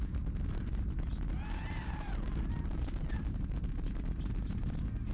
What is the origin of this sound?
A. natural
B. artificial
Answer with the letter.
A